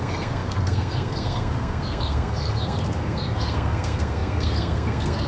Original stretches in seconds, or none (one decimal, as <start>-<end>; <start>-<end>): none